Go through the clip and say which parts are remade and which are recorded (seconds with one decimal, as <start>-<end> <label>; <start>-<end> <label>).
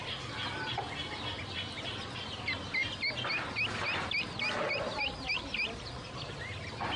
0.0-7.0 recorded